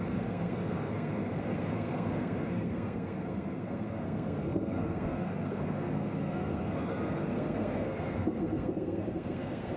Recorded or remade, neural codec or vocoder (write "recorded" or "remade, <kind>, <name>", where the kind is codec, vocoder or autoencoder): remade, codec, SNAC